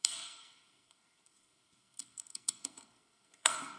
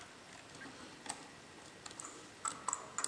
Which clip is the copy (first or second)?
first